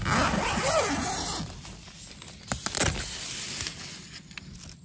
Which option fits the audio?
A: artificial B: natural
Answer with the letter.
B